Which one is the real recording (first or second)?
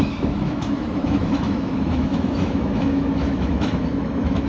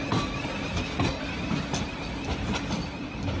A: second